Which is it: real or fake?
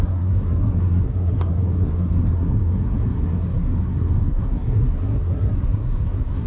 fake